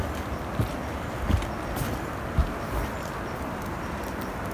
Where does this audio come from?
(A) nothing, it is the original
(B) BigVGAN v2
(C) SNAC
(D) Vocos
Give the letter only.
A